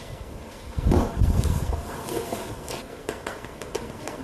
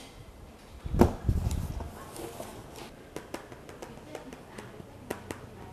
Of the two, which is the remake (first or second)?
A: first